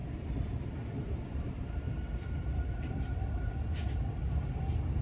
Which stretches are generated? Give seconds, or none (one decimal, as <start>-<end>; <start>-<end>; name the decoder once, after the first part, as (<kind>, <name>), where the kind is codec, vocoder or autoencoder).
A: 0.5-5.0 (vocoder, BigVGAN v2)